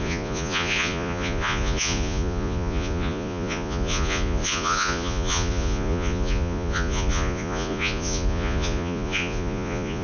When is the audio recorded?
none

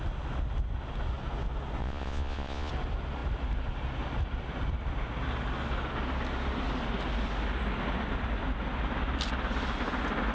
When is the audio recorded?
0.0-1.8; 2.7-10.3

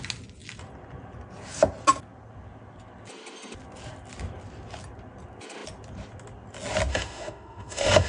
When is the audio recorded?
0.0-6.9

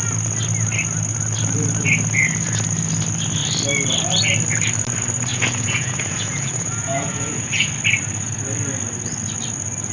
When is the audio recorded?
0.0-5.3; 7.7-9.9

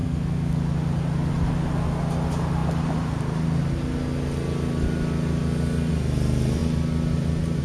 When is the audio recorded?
0.6-7.6